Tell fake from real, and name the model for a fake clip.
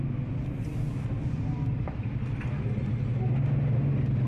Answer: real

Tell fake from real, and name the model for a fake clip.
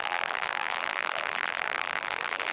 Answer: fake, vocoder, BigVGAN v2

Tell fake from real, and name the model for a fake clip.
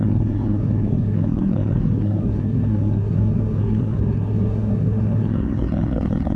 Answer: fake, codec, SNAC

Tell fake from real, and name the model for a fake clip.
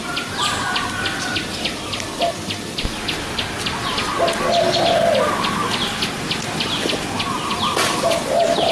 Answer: real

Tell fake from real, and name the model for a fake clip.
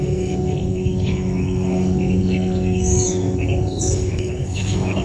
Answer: fake, codec, SNAC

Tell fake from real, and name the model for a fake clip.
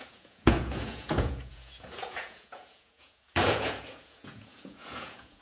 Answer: fake, vocoder, Vocos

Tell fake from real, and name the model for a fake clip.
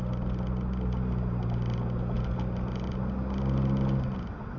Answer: real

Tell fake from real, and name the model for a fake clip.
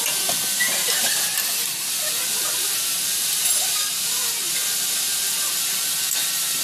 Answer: real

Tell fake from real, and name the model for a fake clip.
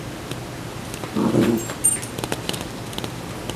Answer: real